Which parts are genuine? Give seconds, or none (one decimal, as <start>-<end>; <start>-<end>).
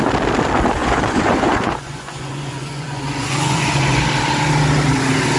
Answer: 0.0-0.8; 4.0-5.4